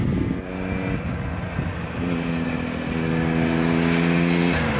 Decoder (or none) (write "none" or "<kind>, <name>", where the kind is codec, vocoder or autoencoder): none